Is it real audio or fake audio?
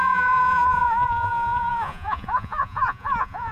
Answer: fake